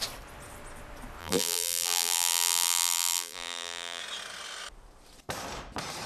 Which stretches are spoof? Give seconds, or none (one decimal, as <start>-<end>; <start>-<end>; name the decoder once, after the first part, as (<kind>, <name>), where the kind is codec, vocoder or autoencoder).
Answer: 1.2-4.0 (vocoder, BigVGAN v2)